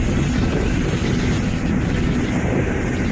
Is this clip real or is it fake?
real